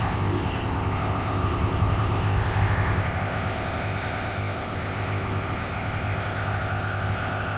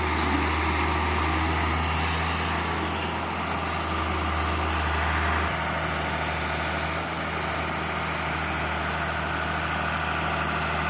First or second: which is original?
second